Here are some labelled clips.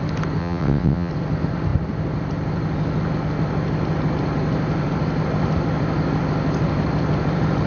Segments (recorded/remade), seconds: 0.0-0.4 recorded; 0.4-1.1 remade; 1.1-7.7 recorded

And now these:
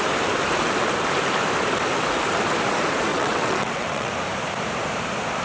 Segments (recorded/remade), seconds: 0.0-3.1 recorded; 3.1-4.1 remade; 4.1-5.4 recorded

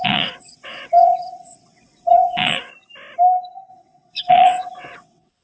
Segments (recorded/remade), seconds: 0.0-2.7 remade; 2.7-3.7 recorded; 3.7-5.4 remade

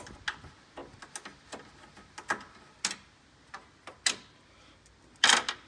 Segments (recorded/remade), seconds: 0.0-5.7 recorded

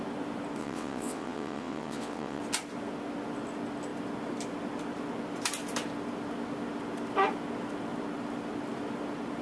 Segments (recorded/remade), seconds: 0.0-0.6 recorded; 0.6-2.4 remade; 2.4-9.4 recorded